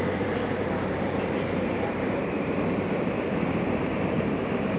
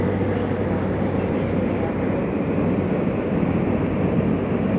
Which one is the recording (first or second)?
second